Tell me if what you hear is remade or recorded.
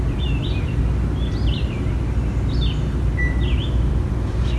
recorded